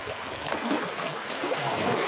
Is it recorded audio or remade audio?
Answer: remade